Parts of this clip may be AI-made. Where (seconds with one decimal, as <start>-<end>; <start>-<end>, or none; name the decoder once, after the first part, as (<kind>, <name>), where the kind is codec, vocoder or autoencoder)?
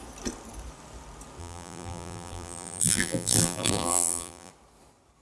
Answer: 1.4-4.5 (vocoder, BigVGAN v2)